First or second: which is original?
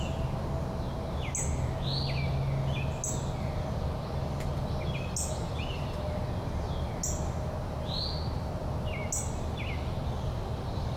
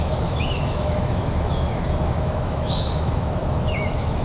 first